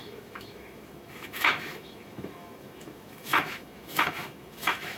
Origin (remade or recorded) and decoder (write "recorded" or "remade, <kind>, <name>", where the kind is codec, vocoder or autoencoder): remade, autoencoder, DAC-VAE